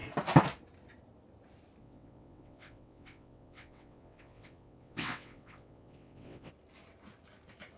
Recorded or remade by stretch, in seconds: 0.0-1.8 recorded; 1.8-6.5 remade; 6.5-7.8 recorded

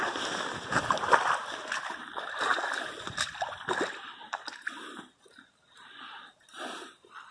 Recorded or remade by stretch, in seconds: 0.0-7.3 recorded